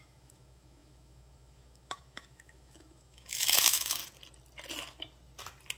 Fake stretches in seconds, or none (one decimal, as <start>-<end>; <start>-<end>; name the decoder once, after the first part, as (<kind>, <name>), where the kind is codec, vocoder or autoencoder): 0.0-4.0 (autoencoder, DAC-VAE)